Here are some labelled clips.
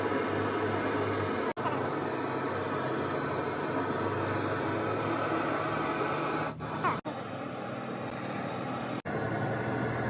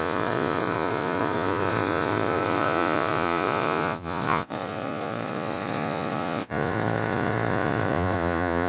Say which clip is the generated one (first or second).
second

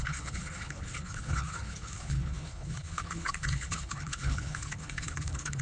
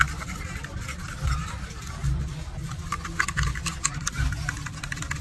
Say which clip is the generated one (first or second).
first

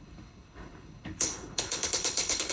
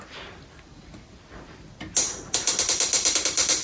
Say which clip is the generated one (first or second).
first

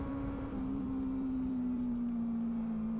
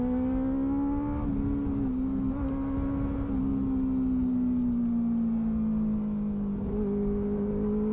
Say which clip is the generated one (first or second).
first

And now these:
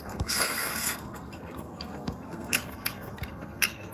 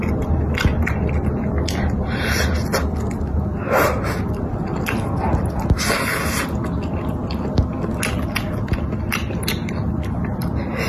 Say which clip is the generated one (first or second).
first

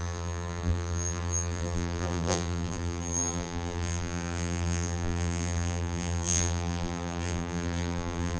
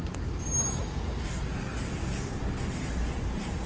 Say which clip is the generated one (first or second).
first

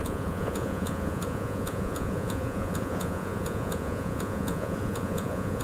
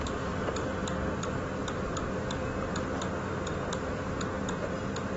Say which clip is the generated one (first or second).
first